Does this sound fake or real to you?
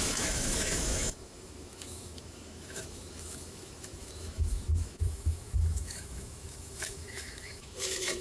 fake